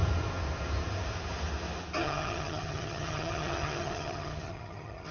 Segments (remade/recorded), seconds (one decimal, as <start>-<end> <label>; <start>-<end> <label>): 0.0-2.0 recorded; 2.0-5.1 remade